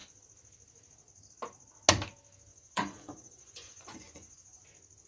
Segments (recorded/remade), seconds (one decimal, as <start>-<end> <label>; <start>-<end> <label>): 0.0-2.5 recorded; 2.5-4.6 remade; 4.6-5.1 recorded